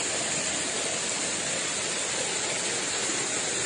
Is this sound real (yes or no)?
yes